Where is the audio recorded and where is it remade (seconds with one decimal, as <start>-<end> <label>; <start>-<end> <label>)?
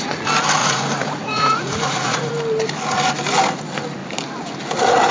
0.0-0.6 recorded; 0.6-2.3 remade; 2.3-5.1 recorded